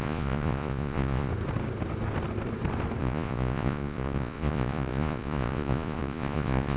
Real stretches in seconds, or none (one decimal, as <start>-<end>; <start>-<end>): 1.3-3.0